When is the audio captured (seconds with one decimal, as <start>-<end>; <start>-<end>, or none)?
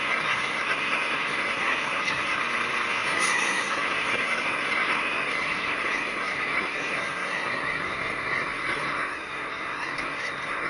2.4-2.9